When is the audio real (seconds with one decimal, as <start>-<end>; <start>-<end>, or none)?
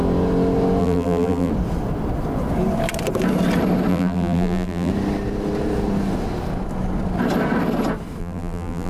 0.0-0.8; 1.5-3.9; 4.9-8.2